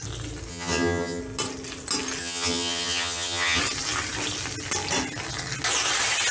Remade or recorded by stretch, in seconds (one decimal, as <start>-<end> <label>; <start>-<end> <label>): 0.0-0.5 recorded; 0.5-1.2 remade; 1.2-2.2 recorded; 2.2-3.6 remade; 3.6-6.3 recorded